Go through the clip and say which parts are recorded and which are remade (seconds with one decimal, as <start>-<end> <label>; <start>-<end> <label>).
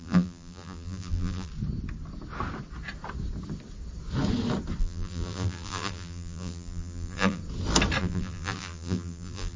0.0-1.5 remade; 1.5-4.8 recorded; 4.8-7.4 remade; 7.4-8.0 recorded; 8.0-9.6 remade